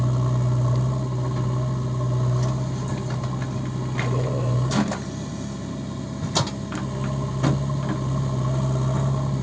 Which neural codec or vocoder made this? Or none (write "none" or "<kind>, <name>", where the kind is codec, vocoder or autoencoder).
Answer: none